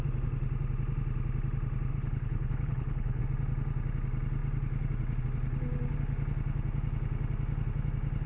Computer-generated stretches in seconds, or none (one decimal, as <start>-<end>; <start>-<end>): 1.9-3.2